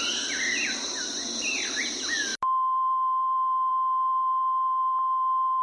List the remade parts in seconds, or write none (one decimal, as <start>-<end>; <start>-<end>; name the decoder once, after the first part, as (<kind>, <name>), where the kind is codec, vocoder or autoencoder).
none

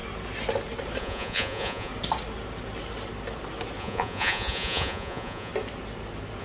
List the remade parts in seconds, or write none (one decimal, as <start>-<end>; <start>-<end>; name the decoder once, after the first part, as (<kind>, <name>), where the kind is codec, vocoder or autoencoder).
1.0-1.9 (vocoder, Vocos); 3.8-5.5

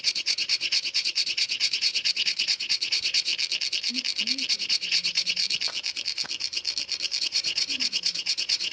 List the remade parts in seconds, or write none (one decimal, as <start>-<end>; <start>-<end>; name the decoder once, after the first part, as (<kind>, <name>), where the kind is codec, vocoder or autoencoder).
0.0-3.3 (vocoder, Vocos); 4.5-5.4; 7.2-8.7

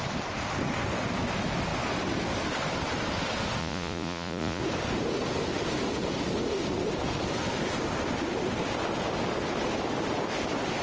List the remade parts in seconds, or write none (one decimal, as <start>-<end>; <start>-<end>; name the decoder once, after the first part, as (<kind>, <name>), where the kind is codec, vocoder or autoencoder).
3.6-4.6 (vocoder, Vocos)

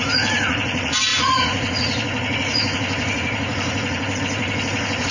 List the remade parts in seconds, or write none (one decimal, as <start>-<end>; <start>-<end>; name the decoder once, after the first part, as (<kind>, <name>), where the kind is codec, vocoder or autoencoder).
0.0-5.1 (vocoder, Vocos)

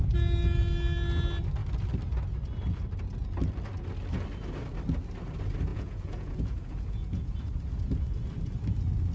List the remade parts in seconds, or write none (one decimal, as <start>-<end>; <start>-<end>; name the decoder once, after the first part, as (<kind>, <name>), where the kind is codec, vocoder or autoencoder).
5.7-7.4 (vocoder, Vocos)

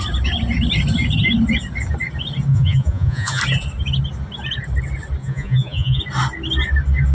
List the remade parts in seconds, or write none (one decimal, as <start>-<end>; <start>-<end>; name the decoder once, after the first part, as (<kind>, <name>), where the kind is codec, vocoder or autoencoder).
2.5-3.4 (vocoder, Vocos); 5.2-6.0